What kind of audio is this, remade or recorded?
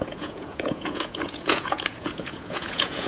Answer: remade